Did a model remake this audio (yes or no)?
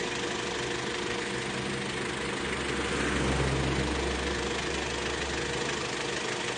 no